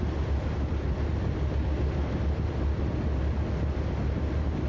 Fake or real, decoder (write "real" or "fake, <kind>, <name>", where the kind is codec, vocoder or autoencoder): real